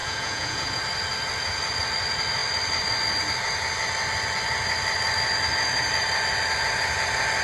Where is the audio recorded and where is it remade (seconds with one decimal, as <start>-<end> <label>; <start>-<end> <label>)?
0.0-0.8 remade; 0.8-7.4 recorded